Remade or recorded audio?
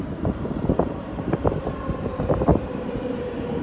remade